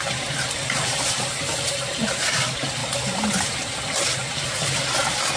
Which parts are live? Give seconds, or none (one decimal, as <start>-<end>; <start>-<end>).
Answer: 0.0-5.4